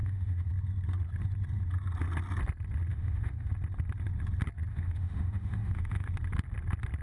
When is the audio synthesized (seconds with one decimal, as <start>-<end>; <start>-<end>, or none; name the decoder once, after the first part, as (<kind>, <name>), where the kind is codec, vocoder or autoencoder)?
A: 0.0-0.5 (autoencoder, DAC-VAE); 2.9-3.5; 4.7-6.1